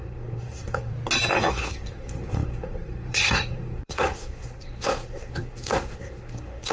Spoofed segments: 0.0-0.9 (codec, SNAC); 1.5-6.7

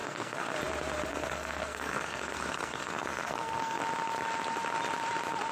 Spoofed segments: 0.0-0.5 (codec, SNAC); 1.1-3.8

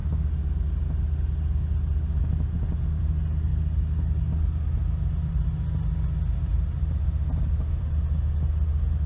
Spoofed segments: none

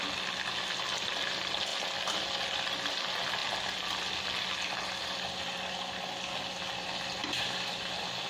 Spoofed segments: none